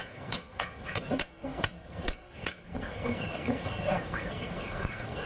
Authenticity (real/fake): fake